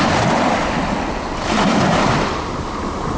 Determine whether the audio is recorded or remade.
recorded